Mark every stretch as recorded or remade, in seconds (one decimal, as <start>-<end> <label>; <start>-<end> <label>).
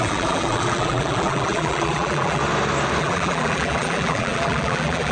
0.0-2.4 remade; 2.4-3.0 recorded; 3.0-5.1 remade